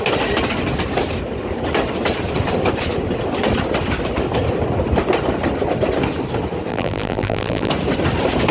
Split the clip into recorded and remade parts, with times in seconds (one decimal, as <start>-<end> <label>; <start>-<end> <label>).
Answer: 0.0-6.7 recorded; 6.7-7.7 remade; 7.7-8.5 recorded